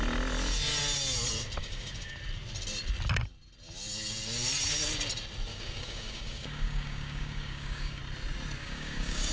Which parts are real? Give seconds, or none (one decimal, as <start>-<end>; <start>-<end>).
0.0-1.6; 2.2-5.5; 8.0-8.6